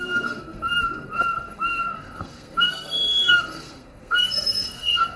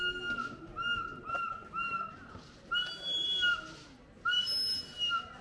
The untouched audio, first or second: second